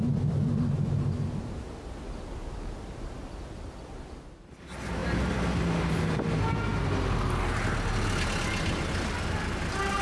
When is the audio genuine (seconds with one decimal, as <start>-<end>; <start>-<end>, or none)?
0.0-10.0